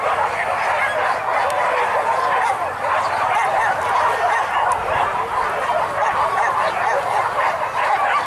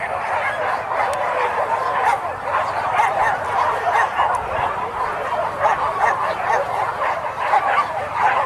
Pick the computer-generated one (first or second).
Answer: second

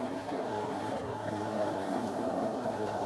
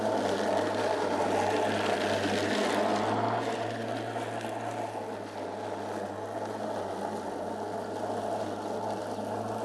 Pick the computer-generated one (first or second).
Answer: first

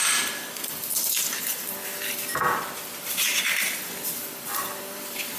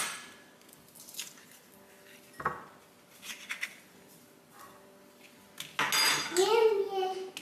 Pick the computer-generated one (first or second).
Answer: first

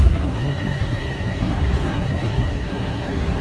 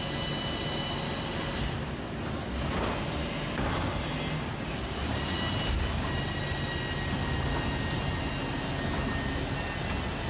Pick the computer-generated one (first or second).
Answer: first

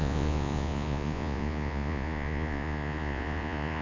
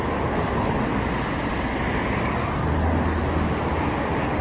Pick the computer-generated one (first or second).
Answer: first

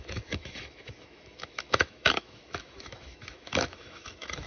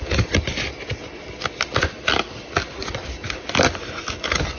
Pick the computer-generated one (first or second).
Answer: first